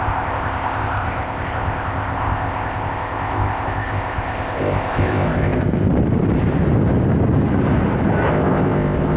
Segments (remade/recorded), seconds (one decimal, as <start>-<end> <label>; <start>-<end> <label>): 0.0-5.9 remade; 5.9-8.3 recorded; 8.3-9.2 remade